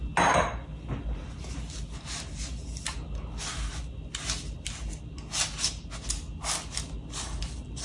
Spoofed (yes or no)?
no